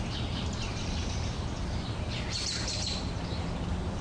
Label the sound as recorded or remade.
remade